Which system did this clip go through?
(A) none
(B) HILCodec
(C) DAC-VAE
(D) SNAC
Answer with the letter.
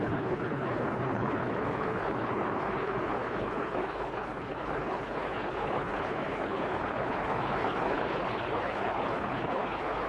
B